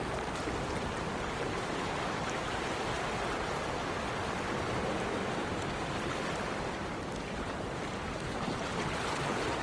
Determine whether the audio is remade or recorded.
recorded